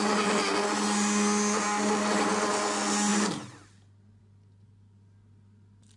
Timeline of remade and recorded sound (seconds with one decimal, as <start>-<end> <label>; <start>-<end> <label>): 0.0-6.0 recorded